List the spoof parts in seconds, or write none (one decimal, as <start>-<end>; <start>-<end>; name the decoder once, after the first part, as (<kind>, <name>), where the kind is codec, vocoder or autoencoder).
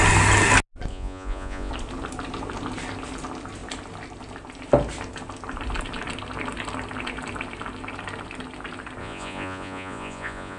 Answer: 0.9-1.7 (vocoder, Vocos); 9.0-10.6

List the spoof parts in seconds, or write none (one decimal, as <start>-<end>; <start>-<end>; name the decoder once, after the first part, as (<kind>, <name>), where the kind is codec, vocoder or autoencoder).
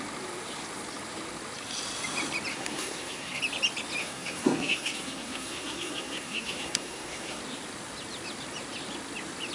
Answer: 2.5-3.4 (codec, SNAC); 4.0-7.4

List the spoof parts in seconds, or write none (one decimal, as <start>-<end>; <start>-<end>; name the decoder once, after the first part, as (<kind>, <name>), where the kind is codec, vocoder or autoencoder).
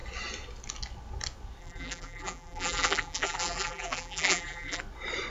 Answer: 1.6-4.8 (vocoder, BigVGAN v2)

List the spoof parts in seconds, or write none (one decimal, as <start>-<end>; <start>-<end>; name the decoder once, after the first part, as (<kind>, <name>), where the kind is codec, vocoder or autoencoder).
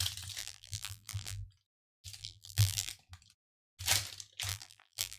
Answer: 0.4-1.5 (vocoder, BigVGAN v2); 2.2-2.9; 4.5-5.2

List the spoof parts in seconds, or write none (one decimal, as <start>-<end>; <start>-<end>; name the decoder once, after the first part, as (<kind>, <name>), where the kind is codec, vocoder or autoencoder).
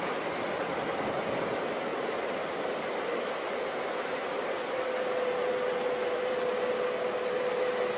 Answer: none